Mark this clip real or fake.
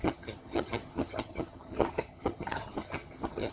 fake